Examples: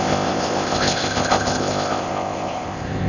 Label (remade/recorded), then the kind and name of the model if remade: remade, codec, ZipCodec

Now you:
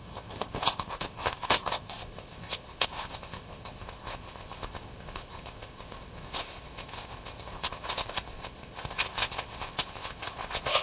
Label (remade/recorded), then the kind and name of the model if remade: remade, codec, ZipCodec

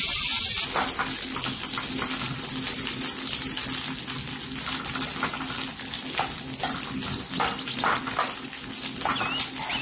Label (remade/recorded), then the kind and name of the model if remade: recorded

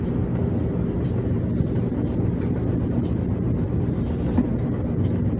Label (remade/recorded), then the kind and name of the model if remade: recorded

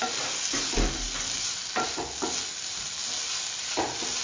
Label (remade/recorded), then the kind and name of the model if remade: recorded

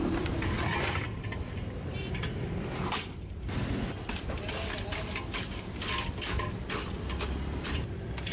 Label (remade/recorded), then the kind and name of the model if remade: recorded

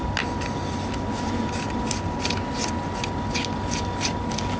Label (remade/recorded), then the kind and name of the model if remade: recorded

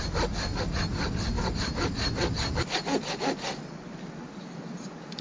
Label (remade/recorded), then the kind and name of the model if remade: recorded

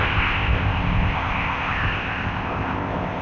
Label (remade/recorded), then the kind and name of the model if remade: remade, codec, ZipCodec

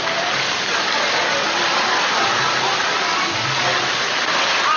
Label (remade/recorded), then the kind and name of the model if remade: recorded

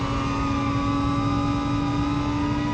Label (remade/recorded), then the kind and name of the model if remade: recorded